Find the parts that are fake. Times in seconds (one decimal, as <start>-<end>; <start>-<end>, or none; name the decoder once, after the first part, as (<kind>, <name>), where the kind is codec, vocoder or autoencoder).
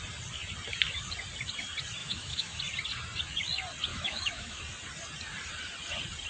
2.0-2.6 (autoencoder, DAC-VAE); 3.9-4.6